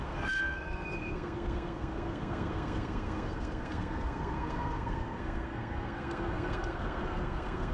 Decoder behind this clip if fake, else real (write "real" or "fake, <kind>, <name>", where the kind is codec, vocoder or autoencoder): fake, codec, SNAC